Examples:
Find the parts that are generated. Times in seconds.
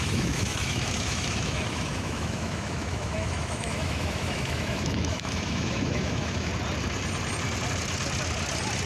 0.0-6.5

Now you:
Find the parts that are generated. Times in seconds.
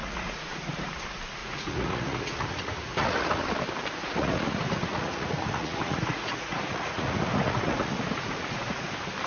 0.0-0.9; 1.4-3.4; 4.0-8.9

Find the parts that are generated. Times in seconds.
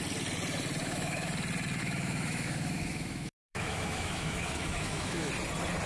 0.8-1.3; 1.8-5.3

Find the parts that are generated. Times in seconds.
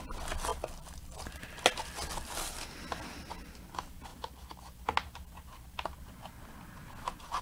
none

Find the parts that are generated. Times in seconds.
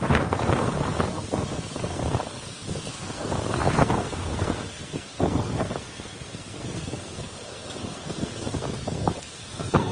0.0-9.9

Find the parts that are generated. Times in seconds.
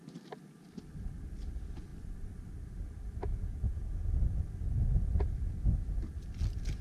3.3-4.1